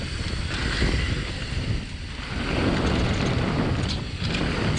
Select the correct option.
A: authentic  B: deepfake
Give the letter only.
A